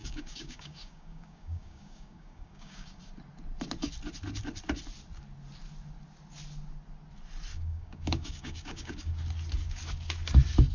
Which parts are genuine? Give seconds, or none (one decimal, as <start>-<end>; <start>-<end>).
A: 3.0-7.5; 9.1-10.7